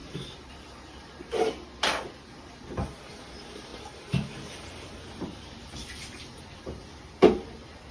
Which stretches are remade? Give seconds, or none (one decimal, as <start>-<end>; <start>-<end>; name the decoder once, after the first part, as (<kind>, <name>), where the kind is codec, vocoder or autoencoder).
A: 0.0-1.4 (vocoder, BigVGAN v2); 3.7-6.4

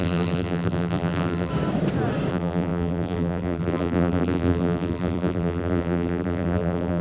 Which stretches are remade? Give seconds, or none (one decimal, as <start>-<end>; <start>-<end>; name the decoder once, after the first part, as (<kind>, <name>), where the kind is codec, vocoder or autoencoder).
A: 0.0-1.5 (vocoder, BigVGAN v2); 2.3-7.0

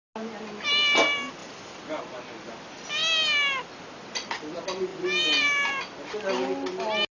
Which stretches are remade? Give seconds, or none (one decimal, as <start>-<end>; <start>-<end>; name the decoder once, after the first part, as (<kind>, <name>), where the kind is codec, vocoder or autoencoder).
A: 1.4-2.0 (vocoder, BigVGAN v2); 4.9-5.8

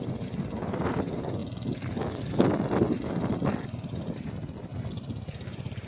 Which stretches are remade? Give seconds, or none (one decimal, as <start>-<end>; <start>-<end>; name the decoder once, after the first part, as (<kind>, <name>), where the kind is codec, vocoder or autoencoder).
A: 0.0-1.4 (vocoder, BigVGAN v2); 4.9-5.9

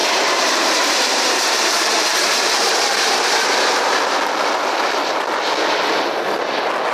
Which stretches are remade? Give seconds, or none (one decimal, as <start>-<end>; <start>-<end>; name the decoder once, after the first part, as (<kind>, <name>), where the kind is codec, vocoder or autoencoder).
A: 0.0-4.1 (vocoder, BigVGAN v2)

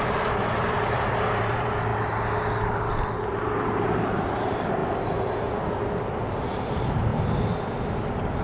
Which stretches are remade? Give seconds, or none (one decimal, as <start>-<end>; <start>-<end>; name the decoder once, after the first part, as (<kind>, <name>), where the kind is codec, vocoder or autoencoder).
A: 0.0-1.9 (vocoder, BigVGAN v2); 2.9-4.8; 6.3-7.1

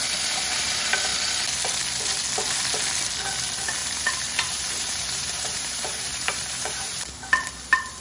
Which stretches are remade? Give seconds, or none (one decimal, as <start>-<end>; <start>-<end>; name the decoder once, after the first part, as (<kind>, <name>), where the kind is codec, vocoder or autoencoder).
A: 3.8-7.2 (vocoder, BigVGAN v2)

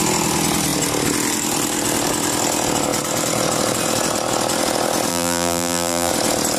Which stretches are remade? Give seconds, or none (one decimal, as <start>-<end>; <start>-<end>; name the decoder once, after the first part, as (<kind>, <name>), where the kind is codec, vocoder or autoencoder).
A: 5.1-6.1 (vocoder, BigVGAN v2)